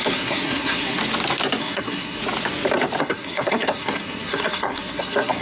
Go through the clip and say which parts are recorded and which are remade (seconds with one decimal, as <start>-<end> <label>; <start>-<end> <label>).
0.0-1.0 remade; 1.0-1.6 recorded; 1.6-2.2 remade; 2.2-3.0 recorded; 3.0-5.4 remade